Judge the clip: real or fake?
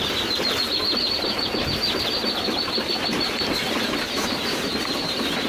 real